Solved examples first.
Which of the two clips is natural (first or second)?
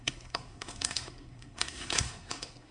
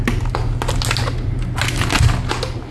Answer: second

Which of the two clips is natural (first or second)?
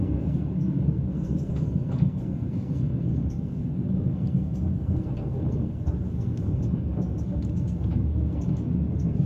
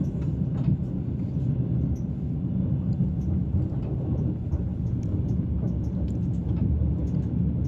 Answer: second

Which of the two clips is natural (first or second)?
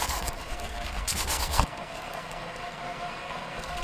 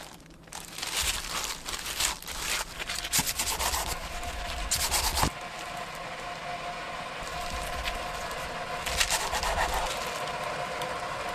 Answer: second